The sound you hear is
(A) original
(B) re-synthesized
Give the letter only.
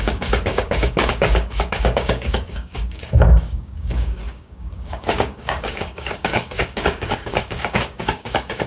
B